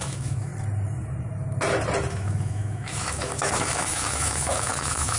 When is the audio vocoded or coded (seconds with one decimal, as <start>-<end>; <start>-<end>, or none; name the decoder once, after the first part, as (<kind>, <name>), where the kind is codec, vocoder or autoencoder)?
0.0-0.5 (autoencoder, DAC-VAE); 2.1-5.2